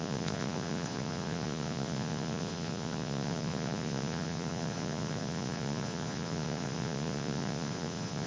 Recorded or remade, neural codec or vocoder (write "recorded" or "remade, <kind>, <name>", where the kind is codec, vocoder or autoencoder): remade, vocoder, Vocos